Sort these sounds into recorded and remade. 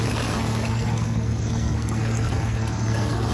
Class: remade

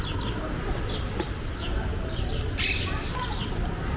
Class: recorded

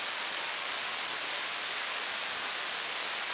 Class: recorded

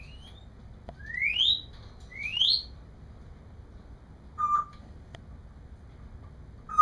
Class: recorded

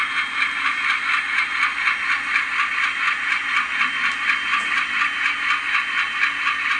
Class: recorded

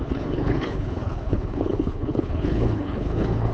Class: remade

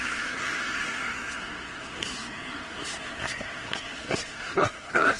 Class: remade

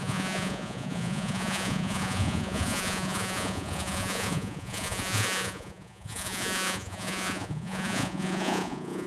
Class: remade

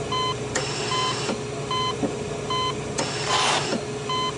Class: recorded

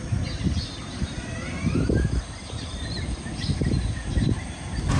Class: recorded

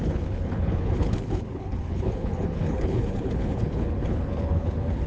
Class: remade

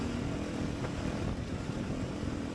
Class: recorded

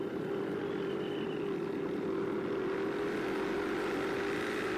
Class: recorded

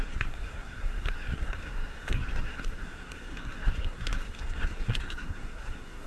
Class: remade